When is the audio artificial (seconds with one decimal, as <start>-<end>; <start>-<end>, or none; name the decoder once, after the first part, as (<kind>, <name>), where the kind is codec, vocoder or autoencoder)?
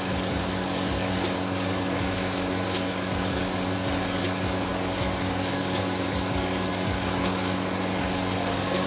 0.0-8.9 (codec, DAC)